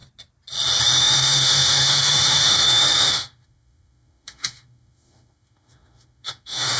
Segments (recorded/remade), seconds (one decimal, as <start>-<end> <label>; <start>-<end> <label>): 0.0-1.0 recorded; 1.0-6.8 remade